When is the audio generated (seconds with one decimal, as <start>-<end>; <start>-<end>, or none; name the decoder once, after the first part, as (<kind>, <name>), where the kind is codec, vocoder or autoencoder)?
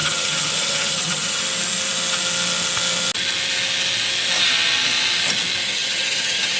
0.0-1.4 (vocoder, HiFi-GAN); 5.6-6.6